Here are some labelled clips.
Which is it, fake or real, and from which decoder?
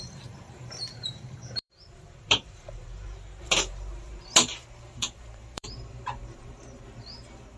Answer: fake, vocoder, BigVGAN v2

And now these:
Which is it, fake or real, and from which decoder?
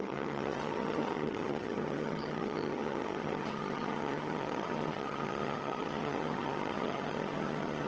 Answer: fake, vocoder, HiFi-GAN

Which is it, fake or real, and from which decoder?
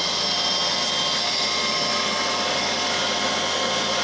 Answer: real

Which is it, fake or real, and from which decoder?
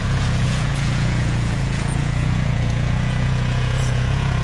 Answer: fake, vocoder, Vocos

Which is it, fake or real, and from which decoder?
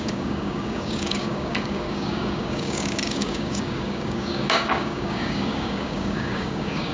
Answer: fake, codec, DAC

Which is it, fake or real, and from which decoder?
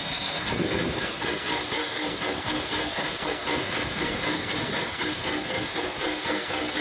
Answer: fake, codec, SNAC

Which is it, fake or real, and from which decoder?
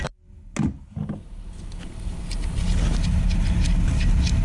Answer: real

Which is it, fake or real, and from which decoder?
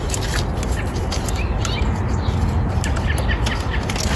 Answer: real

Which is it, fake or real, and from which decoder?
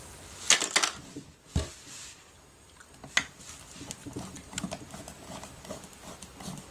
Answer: real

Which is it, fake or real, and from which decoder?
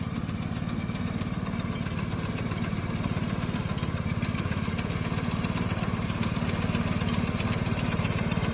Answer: real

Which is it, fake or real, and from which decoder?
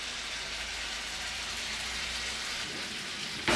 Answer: real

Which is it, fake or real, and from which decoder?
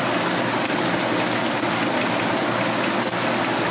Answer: real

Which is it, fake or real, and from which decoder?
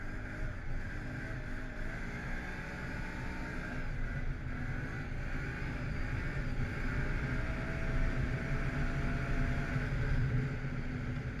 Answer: real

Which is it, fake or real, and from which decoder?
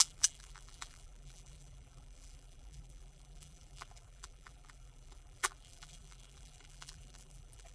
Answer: fake, vocoder, BigVGAN v2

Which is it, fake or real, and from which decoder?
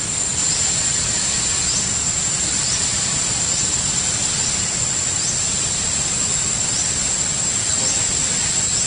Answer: real